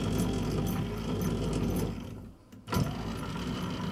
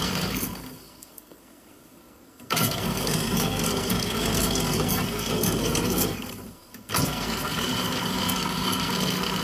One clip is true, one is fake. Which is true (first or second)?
first